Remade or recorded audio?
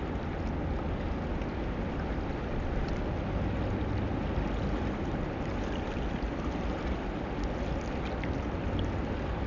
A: recorded